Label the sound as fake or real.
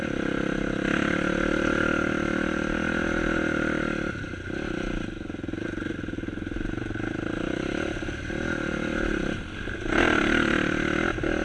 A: real